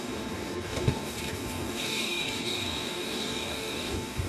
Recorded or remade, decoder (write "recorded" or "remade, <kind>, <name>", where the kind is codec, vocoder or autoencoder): remade, codec, DAC